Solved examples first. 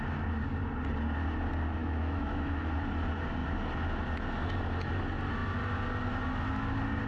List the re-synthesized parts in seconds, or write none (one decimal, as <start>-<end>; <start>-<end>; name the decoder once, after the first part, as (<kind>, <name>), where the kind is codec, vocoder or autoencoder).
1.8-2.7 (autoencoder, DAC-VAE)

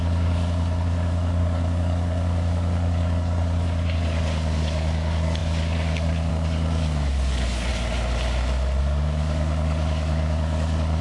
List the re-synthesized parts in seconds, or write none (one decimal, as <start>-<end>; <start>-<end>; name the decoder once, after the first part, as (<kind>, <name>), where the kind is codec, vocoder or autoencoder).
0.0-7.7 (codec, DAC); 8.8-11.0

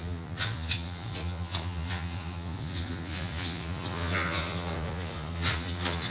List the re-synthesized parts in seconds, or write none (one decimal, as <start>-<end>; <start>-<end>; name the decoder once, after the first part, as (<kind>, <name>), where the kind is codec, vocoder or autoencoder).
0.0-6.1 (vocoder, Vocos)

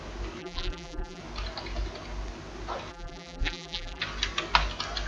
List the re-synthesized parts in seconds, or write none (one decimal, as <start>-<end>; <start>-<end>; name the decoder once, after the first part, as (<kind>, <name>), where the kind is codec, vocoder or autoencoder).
0.4-1.2 (vocoder, BigVGAN v2); 2.9-4.0

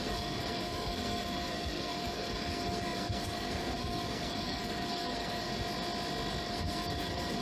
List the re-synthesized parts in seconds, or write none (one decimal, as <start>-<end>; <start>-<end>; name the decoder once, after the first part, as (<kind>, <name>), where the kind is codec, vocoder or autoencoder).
0.0-5.5 (codec, SNAC); 6.5-7.4